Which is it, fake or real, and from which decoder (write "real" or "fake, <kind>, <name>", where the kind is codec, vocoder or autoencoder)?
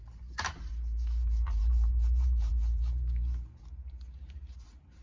fake, vocoder, BigVGAN v2